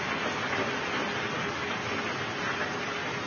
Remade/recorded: recorded